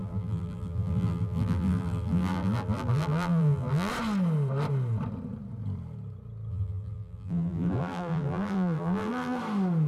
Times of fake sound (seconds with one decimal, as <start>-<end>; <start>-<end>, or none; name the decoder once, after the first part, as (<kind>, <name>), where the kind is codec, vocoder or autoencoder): 0.0-3.9 (vocoder, BigVGAN v2); 6.5-9.4